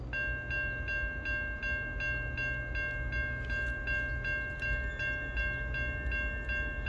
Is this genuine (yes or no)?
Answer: yes